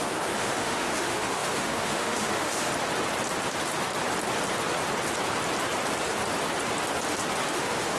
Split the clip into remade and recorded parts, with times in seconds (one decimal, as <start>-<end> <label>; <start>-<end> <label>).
0.0-2.7 remade; 2.7-7.5 recorded; 7.5-8.0 remade